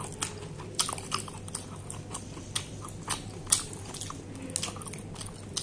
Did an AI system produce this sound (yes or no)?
no